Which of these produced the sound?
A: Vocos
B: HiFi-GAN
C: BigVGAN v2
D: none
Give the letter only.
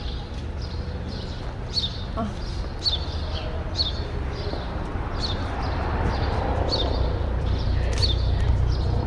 C